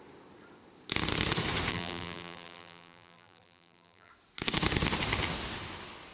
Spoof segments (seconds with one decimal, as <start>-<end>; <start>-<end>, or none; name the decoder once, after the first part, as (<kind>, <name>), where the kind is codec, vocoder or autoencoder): 1.7-4.1 (vocoder, BigVGAN v2)